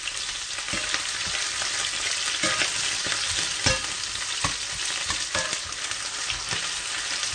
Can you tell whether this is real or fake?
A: real